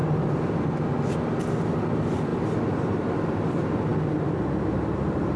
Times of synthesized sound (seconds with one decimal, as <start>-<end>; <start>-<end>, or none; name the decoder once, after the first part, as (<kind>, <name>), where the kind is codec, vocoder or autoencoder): none